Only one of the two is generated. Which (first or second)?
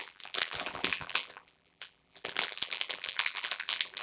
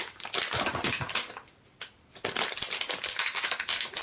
first